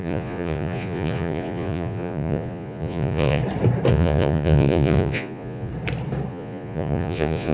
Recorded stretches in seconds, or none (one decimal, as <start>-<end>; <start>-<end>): 3.4-3.9; 5.7-6.3